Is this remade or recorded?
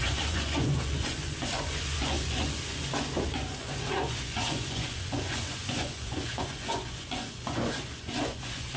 remade